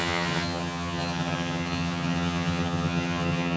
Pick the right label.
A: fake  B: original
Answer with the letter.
A